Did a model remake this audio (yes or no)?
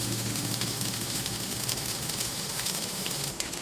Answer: yes